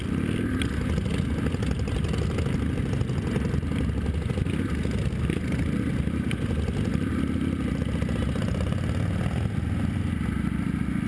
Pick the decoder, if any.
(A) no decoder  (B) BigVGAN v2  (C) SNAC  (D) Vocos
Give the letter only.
A